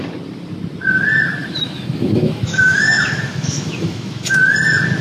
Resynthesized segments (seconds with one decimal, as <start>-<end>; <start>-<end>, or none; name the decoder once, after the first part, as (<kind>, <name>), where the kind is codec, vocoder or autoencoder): 1.4-4.4 (autoencoder, DAC-VAE)